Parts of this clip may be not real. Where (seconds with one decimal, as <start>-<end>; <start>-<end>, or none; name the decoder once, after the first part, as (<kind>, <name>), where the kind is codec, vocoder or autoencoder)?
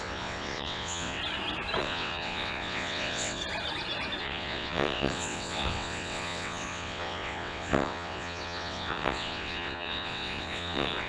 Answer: 0.0-1.2 (vocoder, WaveNeXt); 1.8-3.4; 4.2-11.1